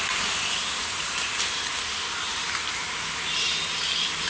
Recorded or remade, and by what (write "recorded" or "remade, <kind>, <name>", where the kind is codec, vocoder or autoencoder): recorded